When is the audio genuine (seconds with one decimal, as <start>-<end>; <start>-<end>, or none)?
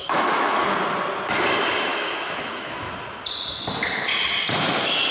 0.6-1.9; 2.9-5.1